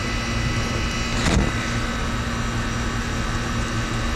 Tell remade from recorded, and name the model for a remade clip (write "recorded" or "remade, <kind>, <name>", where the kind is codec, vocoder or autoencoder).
recorded